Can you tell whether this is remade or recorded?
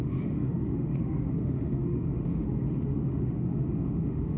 remade